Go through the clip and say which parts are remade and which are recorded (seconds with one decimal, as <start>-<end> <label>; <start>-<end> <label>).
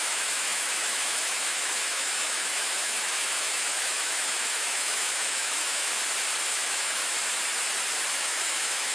0.0-5.9 remade; 5.9-6.4 recorded; 6.4-7.0 remade; 7.0-8.1 recorded; 8.1-8.9 remade